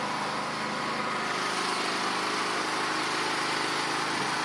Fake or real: real